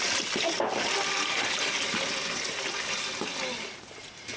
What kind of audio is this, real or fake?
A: real